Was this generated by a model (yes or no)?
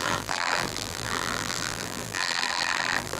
yes